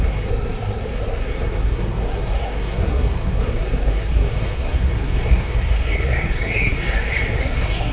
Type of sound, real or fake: fake